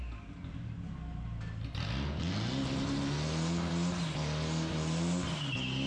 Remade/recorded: recorded